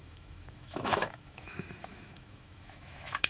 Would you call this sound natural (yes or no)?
no